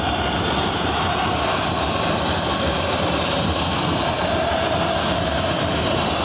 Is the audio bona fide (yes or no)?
no